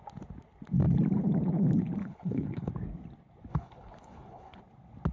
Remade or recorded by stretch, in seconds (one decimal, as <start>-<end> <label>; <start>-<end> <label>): 0.0-2.0 recorded; 2.0-2.7 remade; 2.7-3.5 recorded; 3.5-4.6 remade; 4.6-5.1 recorded